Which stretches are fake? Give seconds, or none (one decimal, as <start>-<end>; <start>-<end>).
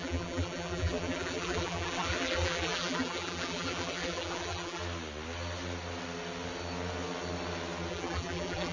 0.0-4.8; 7.9-8.7